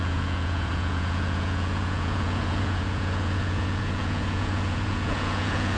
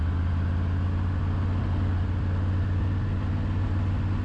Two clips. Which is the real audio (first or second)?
second